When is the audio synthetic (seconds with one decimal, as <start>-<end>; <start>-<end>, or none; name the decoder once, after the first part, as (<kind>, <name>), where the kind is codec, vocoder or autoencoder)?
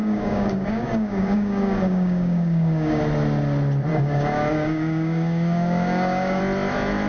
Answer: 0.0-3.0 (codec, DAC); 3.9-6.4